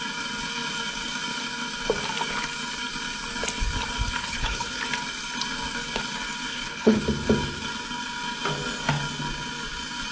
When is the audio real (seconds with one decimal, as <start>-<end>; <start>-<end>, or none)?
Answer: 0.0-4.2; 4.8-6.5; 7.0-10.1